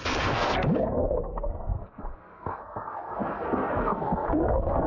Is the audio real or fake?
fake